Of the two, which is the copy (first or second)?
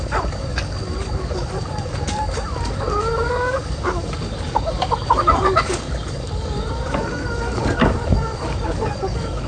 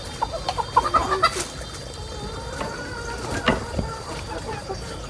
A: first